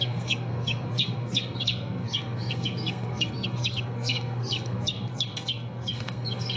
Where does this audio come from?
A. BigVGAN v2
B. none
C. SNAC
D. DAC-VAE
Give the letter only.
C